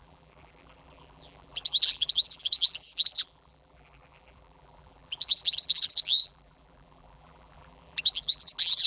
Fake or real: fake